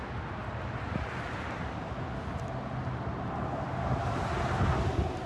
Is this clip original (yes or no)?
yes